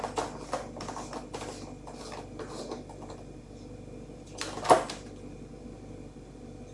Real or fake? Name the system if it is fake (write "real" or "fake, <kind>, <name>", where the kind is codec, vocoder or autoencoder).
real